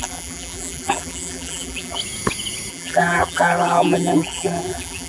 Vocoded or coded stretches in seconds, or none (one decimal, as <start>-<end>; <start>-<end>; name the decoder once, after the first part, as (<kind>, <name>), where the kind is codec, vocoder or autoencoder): 0.0-2.0 (vocoder, BigVGAN v2); 2.7-5.1